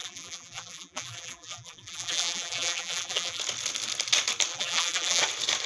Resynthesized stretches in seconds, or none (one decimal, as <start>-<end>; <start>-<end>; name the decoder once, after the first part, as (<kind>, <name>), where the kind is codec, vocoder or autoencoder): 0.0-3.4 (vocoder, BigVGAN v2); 4.5-5.2